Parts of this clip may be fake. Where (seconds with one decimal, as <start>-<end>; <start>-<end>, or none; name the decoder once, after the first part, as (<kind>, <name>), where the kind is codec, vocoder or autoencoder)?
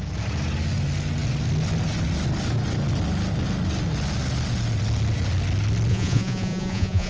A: 5.9-7.1 (vocoder, Vocos)